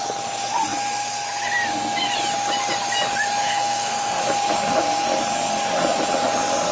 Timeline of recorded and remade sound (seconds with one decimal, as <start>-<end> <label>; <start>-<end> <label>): 0.0-3.4 recorded; 3.4-4.2 remade; 4.2-6.7 recorded